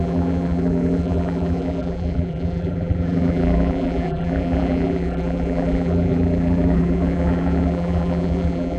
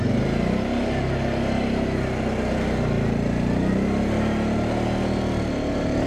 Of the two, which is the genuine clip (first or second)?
second